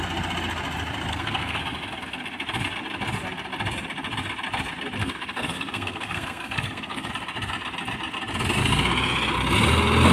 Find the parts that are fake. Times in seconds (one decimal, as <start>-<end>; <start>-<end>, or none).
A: 1.1-1.6; 5.0-7.1